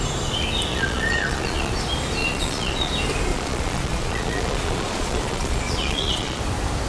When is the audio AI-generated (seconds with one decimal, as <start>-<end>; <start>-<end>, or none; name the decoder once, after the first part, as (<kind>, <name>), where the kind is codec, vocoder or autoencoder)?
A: 0.7-1.7 (vocoder, Vocos); 2.2-2.9; 3.3-6.4